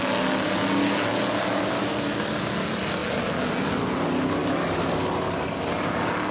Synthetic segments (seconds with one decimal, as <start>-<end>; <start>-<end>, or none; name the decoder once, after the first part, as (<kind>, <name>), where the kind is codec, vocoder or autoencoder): none